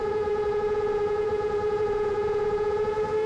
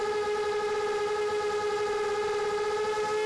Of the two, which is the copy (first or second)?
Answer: first